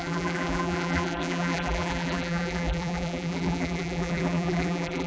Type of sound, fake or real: fake